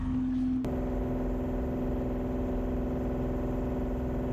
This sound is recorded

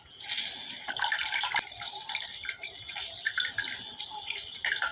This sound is recorded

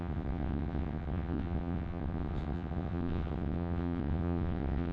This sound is remade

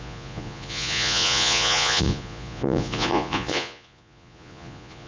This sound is remade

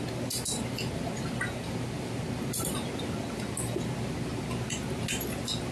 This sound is recorded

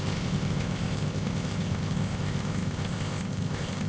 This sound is remade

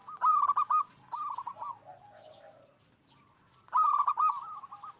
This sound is recorded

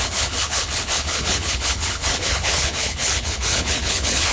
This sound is remade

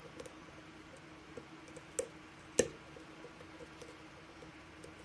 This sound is recorded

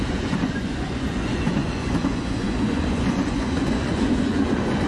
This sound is remade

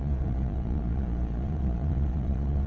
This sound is remade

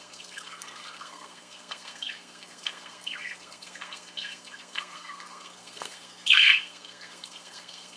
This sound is remade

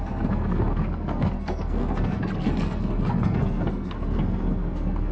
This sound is remade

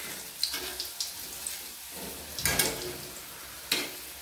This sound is recorded